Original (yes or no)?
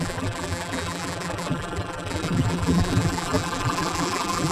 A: no